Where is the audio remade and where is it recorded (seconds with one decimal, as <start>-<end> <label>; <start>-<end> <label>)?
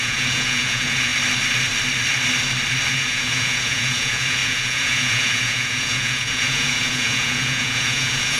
0.0-1.1 remade; 1.1-2.9 recorded; 2.9-8.4 remade